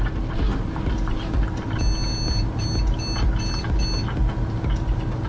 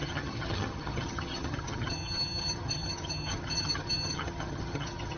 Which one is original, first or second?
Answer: first